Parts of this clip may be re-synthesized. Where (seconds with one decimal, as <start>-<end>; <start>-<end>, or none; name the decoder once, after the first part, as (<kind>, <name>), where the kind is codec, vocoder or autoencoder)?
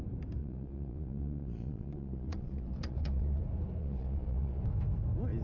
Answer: 0.4-3.4 (vocoder, Vocos); 3.8-4.6